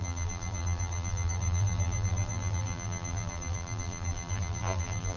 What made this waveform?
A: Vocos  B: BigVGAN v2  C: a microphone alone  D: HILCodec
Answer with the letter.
B